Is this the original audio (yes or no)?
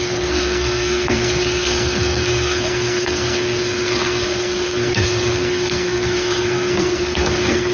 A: no